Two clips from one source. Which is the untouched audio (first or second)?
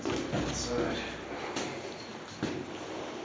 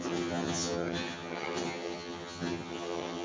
first